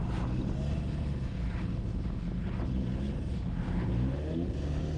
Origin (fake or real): real